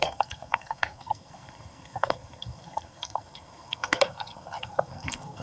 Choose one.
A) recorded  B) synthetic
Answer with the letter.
B